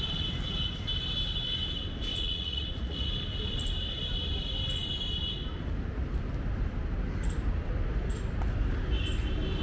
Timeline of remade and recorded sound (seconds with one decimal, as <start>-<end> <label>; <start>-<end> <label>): 0.0-2.1 recorded; 2.1-3.1 remade; 3.1-9.6 recorded